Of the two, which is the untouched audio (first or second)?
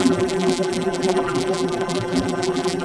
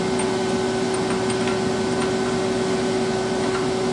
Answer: second